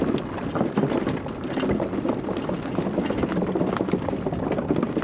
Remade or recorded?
recorded